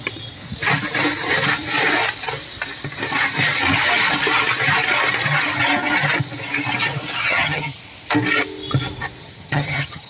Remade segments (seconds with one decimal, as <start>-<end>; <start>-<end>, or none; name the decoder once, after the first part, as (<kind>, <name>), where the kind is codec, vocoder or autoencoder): 7.2-7.8 (vocoder, HiFi-GAN); 9.2-10.1